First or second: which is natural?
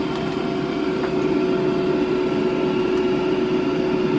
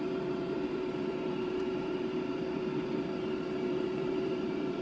first